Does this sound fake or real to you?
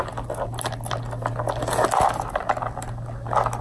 real